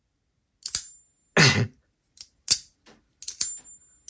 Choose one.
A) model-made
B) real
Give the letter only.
B